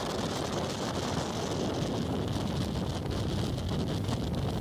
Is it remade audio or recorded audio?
recorded